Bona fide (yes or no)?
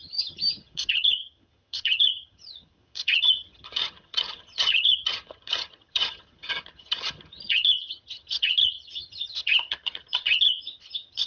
no